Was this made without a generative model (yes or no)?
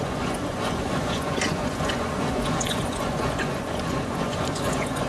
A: no